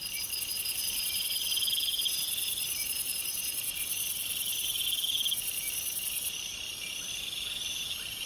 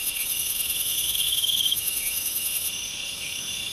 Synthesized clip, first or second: second